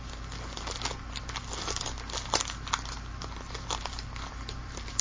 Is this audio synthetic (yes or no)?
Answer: no